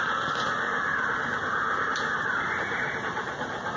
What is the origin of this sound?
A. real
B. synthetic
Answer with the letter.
A